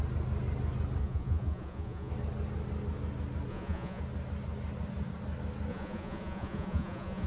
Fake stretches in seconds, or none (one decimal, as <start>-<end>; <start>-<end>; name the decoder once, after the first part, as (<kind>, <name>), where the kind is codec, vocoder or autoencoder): 1.0-2.1 (vocoder, Vocos); 3.5-4.0; 5.7-7.3